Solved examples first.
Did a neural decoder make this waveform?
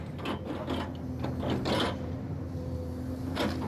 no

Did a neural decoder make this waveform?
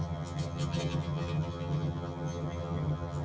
yes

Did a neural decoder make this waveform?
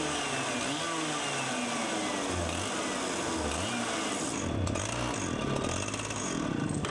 no